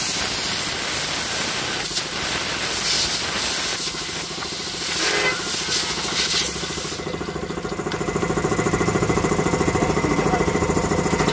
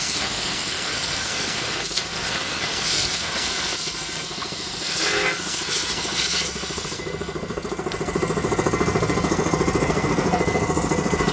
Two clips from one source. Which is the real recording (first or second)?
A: first